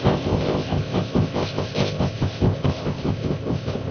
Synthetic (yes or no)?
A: yes